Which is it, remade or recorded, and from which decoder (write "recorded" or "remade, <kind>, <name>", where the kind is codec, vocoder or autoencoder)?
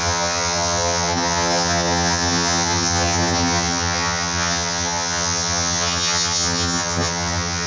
remade, vocoder, HiFi-GAN